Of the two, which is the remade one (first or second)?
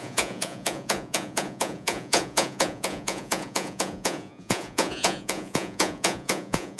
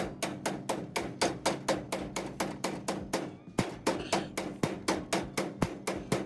first